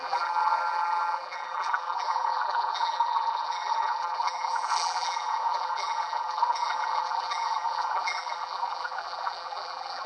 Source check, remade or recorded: remade